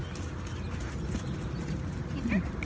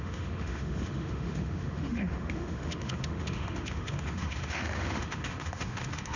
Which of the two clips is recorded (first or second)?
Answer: first